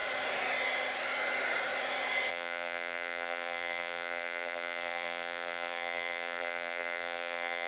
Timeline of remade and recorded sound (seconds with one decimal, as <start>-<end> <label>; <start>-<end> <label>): 0.0-2.3 recorded; 2.3-7.7 remade